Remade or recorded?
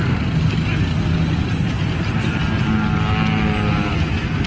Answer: recorded